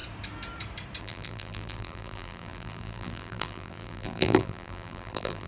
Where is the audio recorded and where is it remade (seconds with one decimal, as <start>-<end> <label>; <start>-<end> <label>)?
0.0-1.0 recorded; 1.0-5.5 remade